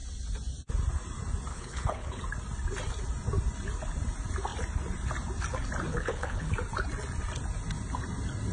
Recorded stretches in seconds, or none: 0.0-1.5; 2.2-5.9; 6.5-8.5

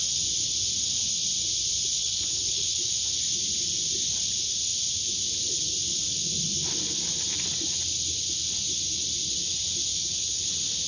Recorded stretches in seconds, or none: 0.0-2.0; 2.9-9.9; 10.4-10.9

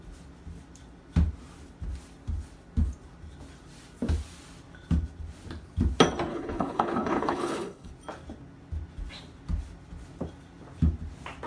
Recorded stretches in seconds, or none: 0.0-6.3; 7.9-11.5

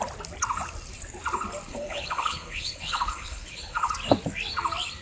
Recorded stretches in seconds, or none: 0.0-1.7; 3.9-5.0

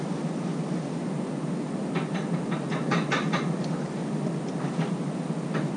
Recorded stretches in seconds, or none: 0.0-5.8

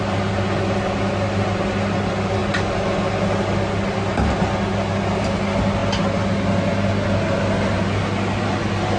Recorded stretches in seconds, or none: 0.0-9.0

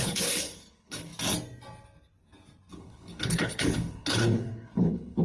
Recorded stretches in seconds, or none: 1.1-2.7

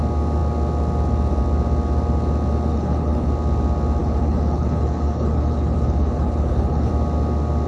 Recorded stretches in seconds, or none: 0.0-2.7; 3.3-4.0; 6.9-7.7